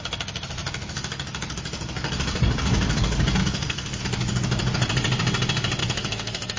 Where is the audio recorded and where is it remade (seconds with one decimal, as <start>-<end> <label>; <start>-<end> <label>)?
0.0-3.4 recorded; 3.4-4.0 remade; 4.0-5.8 recorded; 5.8-6.6 remade